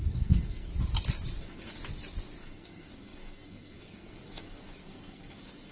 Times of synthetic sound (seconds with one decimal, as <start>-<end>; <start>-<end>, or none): 0.0-0.7; 1.4-1.8; 2.4-5.7